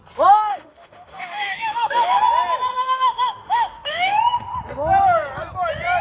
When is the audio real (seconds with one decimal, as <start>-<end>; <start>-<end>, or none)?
0.0-0.5; 2.2-2.7; 4.2-6.0